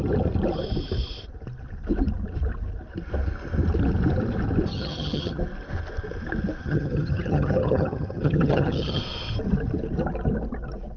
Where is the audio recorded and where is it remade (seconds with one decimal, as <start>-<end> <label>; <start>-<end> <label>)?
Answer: 0.0-4.7 recorded; 4.7-5.4 remade; 5.4-6.6 recorded; 6.6-9.0 remade; 9.0-11.0 recorded